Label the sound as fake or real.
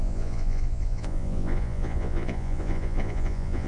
fake